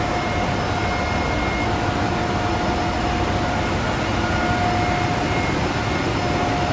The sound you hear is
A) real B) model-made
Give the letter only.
A